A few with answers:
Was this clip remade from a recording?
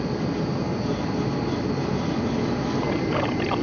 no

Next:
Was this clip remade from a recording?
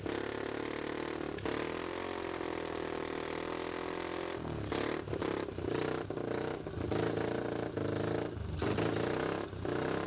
no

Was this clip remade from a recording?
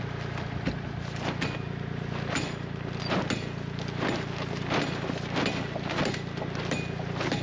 no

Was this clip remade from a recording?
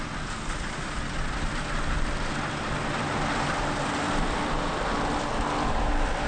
no